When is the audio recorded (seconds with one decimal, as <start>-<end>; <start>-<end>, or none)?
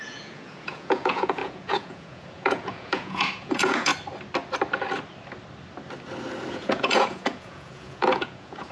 3.9-6.5